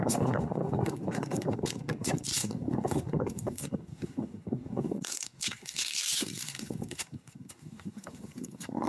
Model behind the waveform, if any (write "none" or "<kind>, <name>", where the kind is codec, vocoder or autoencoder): codec, SNAC